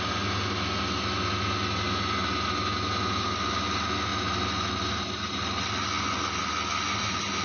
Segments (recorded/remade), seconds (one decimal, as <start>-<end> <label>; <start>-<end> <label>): 0.0-7.4 recorded